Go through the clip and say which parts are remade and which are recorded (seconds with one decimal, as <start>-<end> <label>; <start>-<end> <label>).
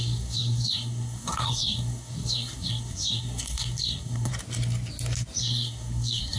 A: 0.0-4.3 remade; 4.3-5.4 recorded; 5.4-6.4 remade